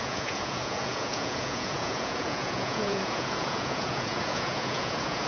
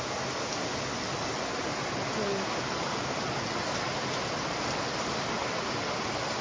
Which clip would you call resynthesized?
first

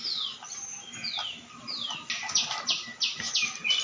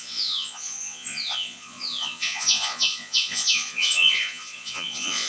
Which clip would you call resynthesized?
second